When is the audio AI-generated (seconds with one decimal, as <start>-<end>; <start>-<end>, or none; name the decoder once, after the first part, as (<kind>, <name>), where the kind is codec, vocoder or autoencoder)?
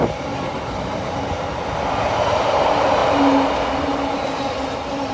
0.0-3.0 (vocoder, BigVGAN v2)